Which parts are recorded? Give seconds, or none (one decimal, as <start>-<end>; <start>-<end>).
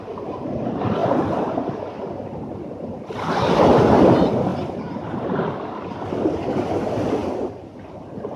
0.0-1.0; 2.0-4.5; 5.4-7.2; 7.8-8.4